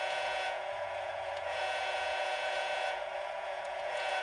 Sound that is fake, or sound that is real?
fake